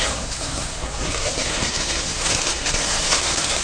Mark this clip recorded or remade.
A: remade